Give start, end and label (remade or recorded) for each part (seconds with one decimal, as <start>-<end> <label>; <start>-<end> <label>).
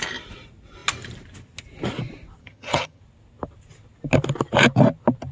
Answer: 0.0-2.4 recorded; 2.4-3.0 remade; 3.0-5.3 recorded